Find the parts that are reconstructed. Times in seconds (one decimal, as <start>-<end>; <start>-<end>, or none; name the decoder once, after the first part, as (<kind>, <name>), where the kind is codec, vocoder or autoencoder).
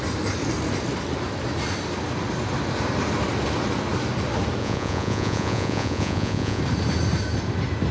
4.6-6.6 (vocoder, Vocos)